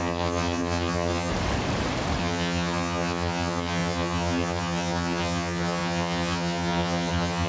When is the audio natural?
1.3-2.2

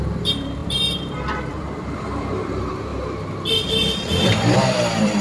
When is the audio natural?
2.9-3.5

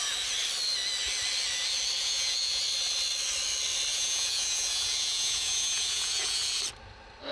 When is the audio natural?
0.0-2.0; 2.6-3.9; 6.6-7.3

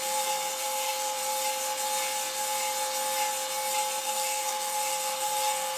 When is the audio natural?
1.2-4.0

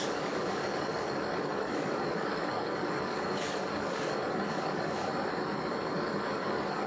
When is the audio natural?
5.1-5.7

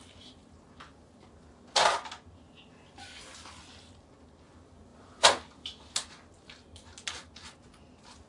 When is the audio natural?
0.0-8.3